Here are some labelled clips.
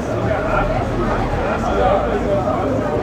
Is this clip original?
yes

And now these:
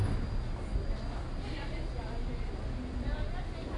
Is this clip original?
yes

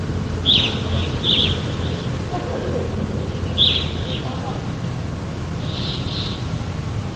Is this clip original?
yes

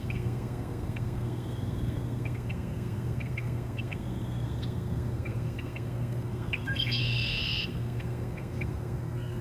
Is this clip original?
no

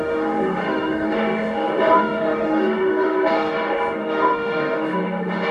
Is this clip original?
no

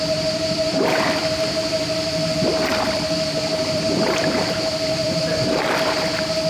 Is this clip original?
no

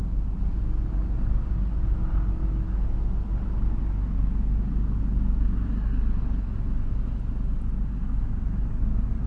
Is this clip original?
yes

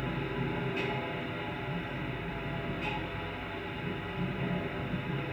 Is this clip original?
yes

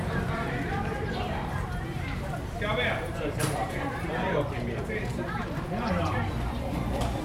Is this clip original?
no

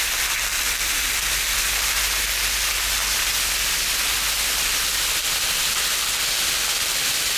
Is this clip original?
yes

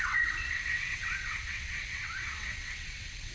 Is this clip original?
no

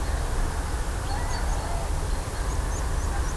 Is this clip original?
yes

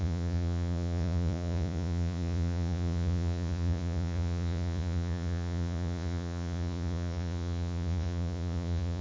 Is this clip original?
no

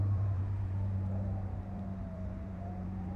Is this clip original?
no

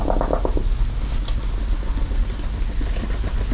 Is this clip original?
yes